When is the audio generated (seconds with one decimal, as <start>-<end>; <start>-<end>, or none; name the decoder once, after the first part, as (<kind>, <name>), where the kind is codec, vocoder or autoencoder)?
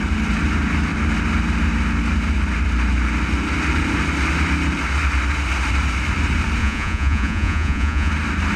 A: 6.6-8.1 (vocoder, Vocos)